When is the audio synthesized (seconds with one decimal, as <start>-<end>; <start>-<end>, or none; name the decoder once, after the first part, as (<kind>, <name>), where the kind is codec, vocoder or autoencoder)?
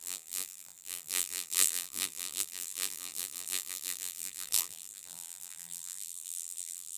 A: 0.0-7.0 (vocoder, BigVGAN v2)